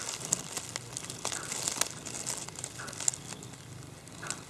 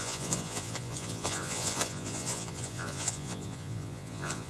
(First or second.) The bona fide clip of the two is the first